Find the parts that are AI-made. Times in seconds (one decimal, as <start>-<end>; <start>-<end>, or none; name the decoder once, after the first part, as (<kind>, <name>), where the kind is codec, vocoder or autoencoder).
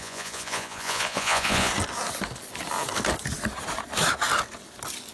0.0-1.7 (vocoder, Vocos)